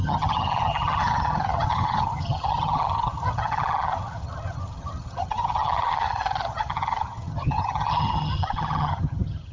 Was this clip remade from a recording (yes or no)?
yes